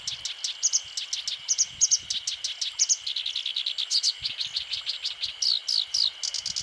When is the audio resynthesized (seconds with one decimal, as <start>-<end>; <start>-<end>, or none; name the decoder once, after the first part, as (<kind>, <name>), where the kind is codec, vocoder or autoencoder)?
none